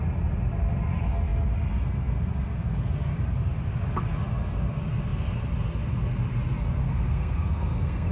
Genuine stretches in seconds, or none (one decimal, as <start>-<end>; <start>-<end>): 0.0-6.8